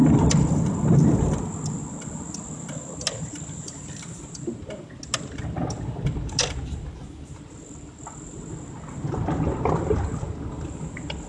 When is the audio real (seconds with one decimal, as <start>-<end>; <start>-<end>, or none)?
0.0-11.3